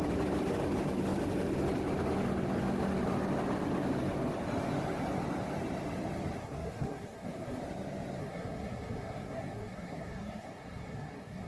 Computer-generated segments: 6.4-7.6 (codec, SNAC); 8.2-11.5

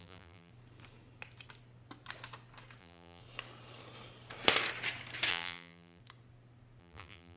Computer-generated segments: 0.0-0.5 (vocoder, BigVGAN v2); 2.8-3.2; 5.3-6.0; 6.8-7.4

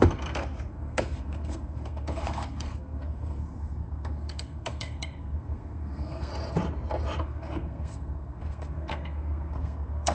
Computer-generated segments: 0.0-6.3 (codec, SNAC); 7.2-10.1

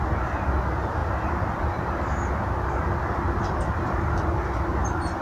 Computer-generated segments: none

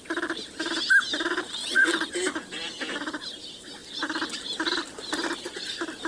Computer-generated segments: 1.6-2.1 (vocoder, WaveNeXt)

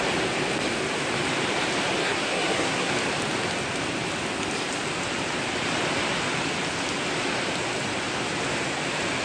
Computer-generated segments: 2.0-2.9 (codec, SNAC)